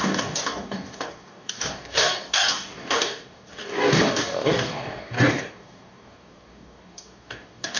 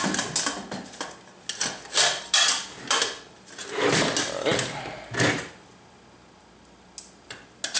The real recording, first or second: second